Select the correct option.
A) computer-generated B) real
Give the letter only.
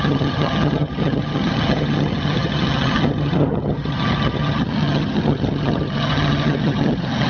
A